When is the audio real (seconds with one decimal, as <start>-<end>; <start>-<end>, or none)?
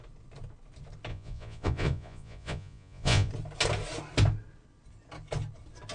0.0-1.1; 3.3-5.9